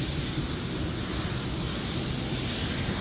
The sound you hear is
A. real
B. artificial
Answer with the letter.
A